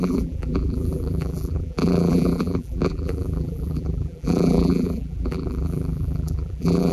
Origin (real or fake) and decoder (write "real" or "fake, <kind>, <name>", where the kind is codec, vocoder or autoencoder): fake, vocoder, BigVGAN v2